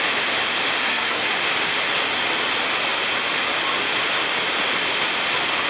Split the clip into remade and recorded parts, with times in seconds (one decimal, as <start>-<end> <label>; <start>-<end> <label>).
0.0-0.8 recorded; 0.8-1.3 remade; 1.3-5.7 recorded